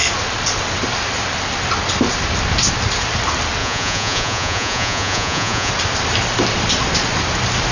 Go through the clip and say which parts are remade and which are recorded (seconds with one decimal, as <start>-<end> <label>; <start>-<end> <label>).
0.0-3.6 recorded; 3.6-5.7 remade; 5.7-7.7 recorded